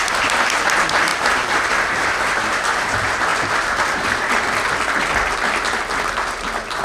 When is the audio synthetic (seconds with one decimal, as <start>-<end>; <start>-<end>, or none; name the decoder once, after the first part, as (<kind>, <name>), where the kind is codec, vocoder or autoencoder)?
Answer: 1.1-1.7 (vocoder, BigVGAN v2)